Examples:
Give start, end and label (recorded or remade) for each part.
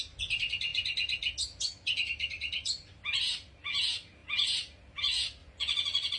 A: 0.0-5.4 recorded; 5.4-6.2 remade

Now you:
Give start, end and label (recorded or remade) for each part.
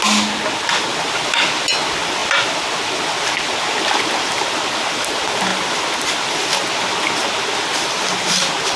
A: 0.0-8.8 recorded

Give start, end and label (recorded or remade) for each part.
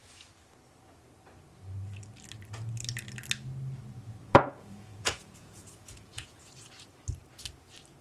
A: 0.0-4.2 recorded; 4.2-6.5 remade; 6.5-8.0 recorded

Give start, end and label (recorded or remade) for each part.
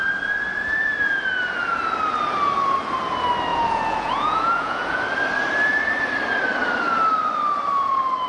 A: 0.0-3.5 recorded; 3.5-5.0 remade; 5.0-8.3 recorded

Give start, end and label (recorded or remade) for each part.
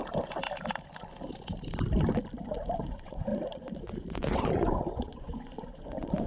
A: 0.0-2.8 recorded; 2.8-6.3 remade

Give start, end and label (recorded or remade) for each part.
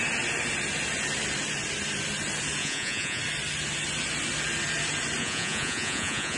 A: 0.0-2.6 recorded; 2.6-3.2 remade; 3.2-5.2 recorded; 5.2-6.4 remade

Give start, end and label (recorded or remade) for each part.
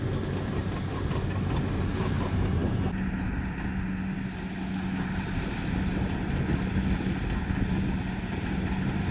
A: 0.0-9.1 recorded